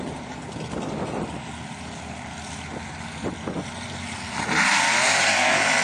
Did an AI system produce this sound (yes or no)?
no